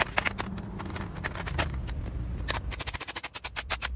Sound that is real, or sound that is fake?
real